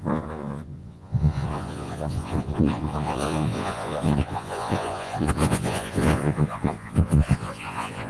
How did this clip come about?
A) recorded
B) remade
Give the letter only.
B